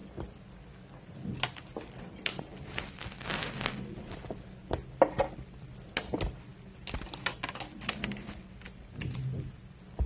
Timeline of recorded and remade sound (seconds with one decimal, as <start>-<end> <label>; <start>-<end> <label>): 0.0-10.1 recorded